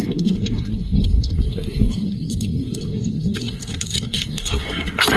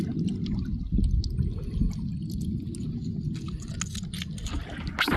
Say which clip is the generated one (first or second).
first